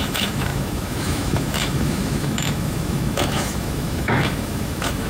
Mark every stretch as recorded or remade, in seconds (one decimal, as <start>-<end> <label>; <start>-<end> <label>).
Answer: 0.0-5.1 remade

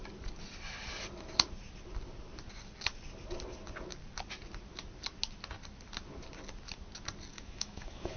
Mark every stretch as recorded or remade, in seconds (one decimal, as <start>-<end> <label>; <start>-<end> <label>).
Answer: 0.0-7.3 recorded; 7.3-8.2 remade

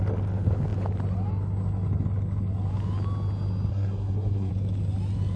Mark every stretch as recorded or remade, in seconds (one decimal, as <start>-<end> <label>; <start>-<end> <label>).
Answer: 0.0-3.7 recorded; 3.7-4.5 remade; 4.5-5.4 recorded

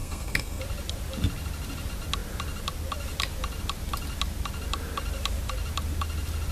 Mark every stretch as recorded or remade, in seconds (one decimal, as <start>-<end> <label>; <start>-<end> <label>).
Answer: 0.0-0.6 remade; 0.6-6.5 recorded

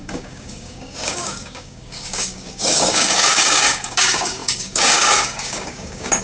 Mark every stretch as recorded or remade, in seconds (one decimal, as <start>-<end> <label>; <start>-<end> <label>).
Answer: 0.0-6.2 remade

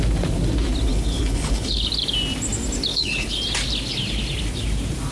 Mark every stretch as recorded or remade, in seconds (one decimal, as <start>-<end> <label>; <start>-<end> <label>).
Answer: 0.0-0.9 recorded; 0.9-1.9 remade; 1.9-2.9 recorded; 2.9-3.4 remade; 3.4-5.1 recorded